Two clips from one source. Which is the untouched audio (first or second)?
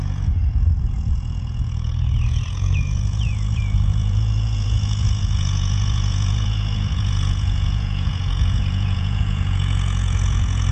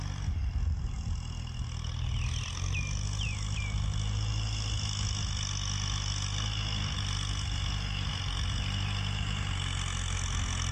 second